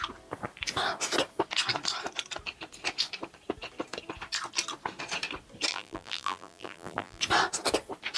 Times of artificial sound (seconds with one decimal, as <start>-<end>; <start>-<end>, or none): 5.7-7.2